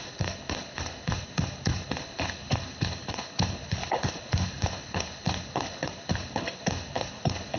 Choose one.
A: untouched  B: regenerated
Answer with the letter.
B